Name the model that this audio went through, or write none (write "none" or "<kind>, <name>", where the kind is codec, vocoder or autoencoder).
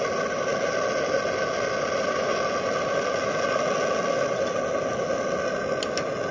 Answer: none